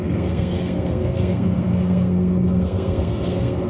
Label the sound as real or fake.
fake